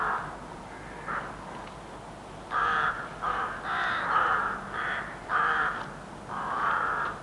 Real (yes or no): yes